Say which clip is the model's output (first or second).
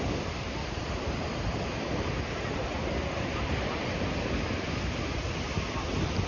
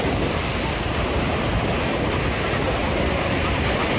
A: first